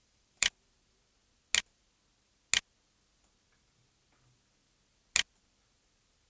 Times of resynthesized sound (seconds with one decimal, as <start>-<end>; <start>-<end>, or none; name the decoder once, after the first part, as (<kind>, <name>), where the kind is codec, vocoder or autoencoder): 0.0-0.5 (vocoder, BigVGAN v2)